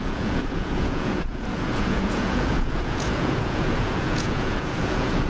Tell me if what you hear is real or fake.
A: fake